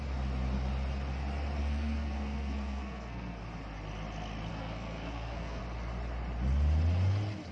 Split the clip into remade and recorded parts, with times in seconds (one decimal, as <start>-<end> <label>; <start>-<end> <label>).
0.0-1.6 recorded; 1.6-3.4 remade; 3.4-4.5 recorded; 4.5-5.6 remade; 5.6-7.5 recorded